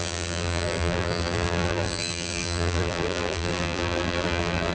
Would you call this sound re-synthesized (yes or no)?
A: yes